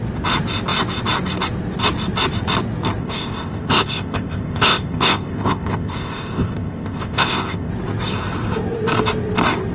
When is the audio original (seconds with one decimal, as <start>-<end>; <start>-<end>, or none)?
0.0-3.0; 7.7-9.7